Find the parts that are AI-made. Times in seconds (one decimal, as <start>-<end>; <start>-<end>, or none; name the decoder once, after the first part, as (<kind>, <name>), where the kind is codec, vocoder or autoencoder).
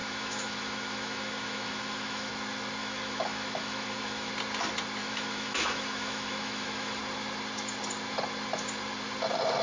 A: 0.0-2.3 (autoencoder, DAC-VAE); 2.8-4.3; 5.0-7.0